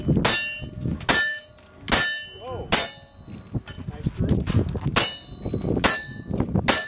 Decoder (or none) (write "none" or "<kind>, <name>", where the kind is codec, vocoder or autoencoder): none